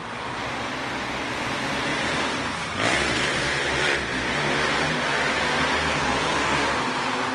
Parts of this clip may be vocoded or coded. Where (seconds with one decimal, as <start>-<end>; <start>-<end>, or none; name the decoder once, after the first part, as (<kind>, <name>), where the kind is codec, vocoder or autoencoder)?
none